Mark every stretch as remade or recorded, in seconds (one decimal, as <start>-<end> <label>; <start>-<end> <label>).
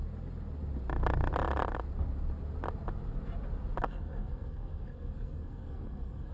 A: 0.0-3.8 recorded; 3.8-6.3 remade